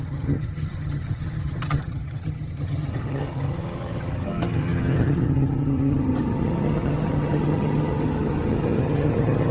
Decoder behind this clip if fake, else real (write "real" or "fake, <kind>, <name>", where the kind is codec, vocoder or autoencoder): fake, vocoder, HiFi-GAN